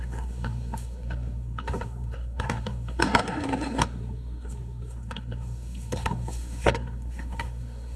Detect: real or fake fake